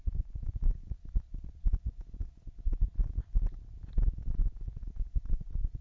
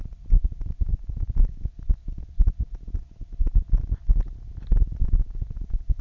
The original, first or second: second